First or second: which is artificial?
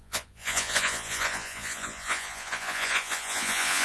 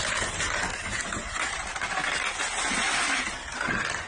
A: first